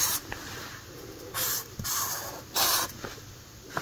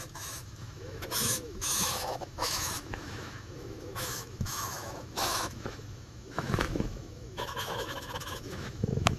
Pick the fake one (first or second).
second